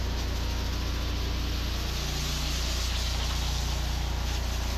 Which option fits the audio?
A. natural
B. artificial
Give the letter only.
A